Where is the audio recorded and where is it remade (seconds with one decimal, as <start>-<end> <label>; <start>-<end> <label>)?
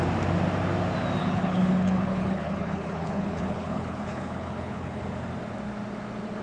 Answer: 0.0-1.2 recorded; 1.2-5.0 remade; 5.0-6.4 recorded